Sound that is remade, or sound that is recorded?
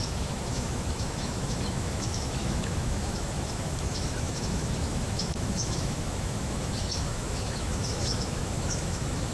remade